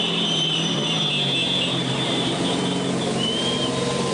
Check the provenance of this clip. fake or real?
fake